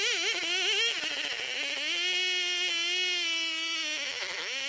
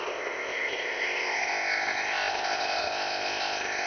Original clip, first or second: first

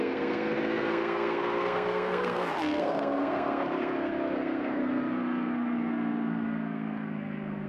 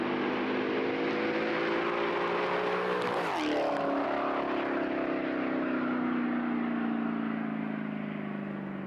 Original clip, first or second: second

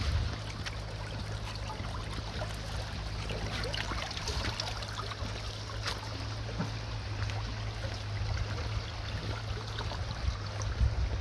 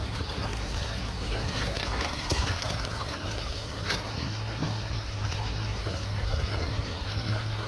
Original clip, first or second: first